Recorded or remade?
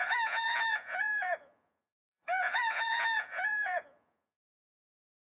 remade